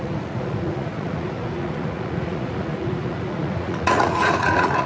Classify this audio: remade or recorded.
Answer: remade